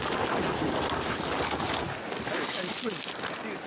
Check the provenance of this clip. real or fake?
real